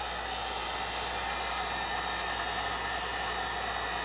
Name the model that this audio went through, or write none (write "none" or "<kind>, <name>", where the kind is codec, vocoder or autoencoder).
none